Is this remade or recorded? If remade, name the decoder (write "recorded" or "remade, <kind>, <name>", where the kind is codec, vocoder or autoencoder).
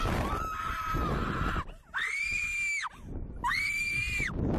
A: recorded